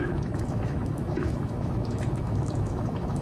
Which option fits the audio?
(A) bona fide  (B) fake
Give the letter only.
B